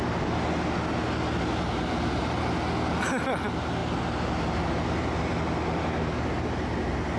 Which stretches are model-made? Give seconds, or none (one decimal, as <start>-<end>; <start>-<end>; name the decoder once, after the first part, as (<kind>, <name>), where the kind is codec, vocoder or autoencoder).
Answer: none